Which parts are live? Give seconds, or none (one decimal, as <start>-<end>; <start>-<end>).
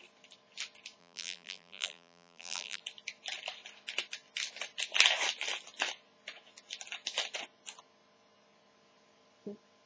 0.0-1.0; 2.8-9.9